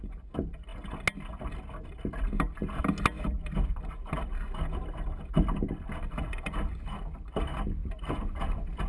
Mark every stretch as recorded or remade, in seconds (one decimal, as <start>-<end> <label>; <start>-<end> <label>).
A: 0.0-8.9 recorded